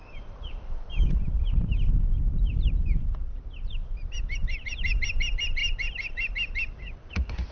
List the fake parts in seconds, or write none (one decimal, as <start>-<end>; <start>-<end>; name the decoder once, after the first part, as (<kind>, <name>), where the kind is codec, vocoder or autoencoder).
0.0-1.5 (vocoder, BigVGAN v2); 5.6-7.1